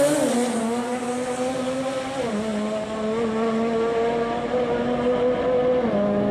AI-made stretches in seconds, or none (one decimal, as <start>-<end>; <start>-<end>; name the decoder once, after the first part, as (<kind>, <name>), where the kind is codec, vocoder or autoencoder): none